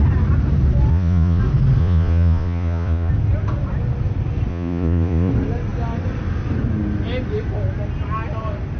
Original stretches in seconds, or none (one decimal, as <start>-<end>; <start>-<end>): 0.0-0.9; 1.4-1.8; 3.1-4.5; 5.3-8.8